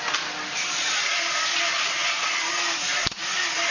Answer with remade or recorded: recorded